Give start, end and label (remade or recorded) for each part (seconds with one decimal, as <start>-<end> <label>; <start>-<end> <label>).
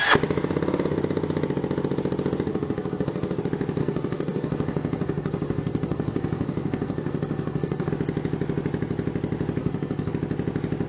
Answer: 0.0-2.5 recorded; 2.5-3.4 remade; 3.4-3.8 recorded; 3.8-7.9 remade; 7.9-9.6 recorded; 9.6-10.1 remade; 10.1-10.9 recorded